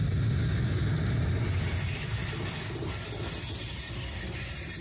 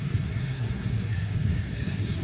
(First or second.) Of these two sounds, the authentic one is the first